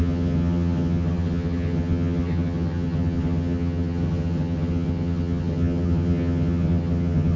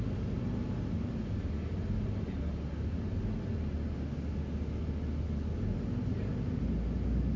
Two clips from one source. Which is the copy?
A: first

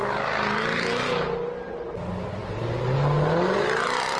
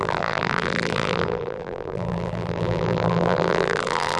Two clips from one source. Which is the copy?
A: second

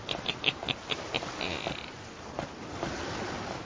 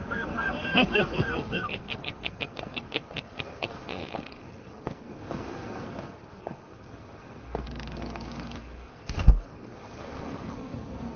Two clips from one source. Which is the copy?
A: second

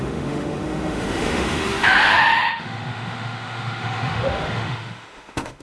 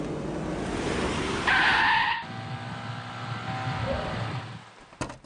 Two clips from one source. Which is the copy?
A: first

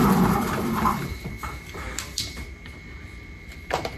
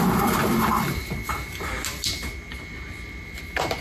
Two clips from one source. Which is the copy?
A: first